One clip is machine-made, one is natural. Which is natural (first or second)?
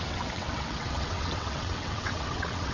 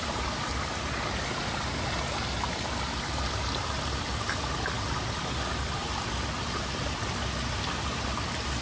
second